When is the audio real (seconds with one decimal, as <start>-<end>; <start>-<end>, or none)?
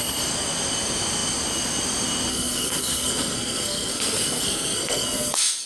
0.0-2.3